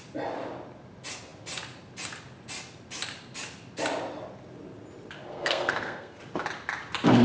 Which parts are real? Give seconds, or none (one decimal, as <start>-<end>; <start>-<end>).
0.0-5.3; 6.2-7.2